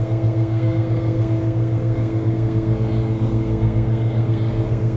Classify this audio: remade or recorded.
remade